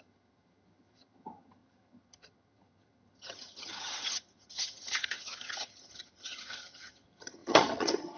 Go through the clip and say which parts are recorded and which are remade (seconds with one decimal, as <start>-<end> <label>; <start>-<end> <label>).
0.0-8.2 remade